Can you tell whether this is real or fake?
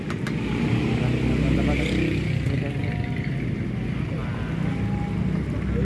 real